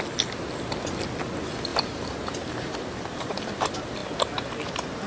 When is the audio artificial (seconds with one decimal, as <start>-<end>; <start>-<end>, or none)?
1.7-3.6